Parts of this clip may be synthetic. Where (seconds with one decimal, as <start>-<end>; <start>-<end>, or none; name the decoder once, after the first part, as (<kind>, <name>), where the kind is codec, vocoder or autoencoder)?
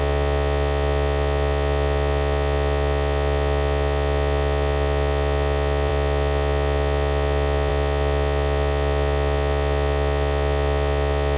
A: none